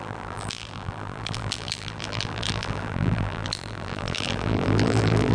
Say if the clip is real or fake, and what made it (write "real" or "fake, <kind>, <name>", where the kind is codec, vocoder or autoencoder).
fake, vocoder, BigVGAN v2